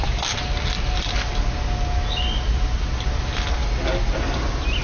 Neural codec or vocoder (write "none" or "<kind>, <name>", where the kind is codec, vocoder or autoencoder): none